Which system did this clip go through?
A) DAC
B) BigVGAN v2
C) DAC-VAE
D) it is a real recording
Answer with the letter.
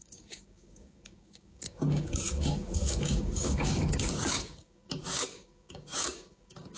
A